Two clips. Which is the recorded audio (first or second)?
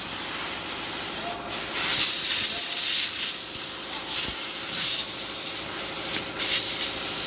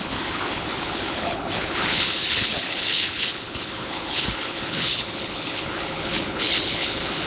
first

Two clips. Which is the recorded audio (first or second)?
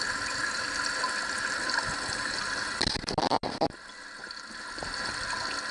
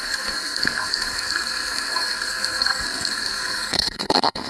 first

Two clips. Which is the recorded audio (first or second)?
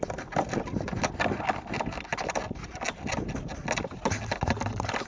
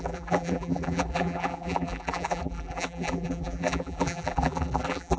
first